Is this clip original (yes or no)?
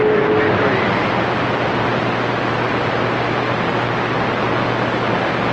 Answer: yes